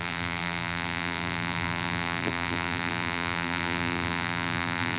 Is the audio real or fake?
fake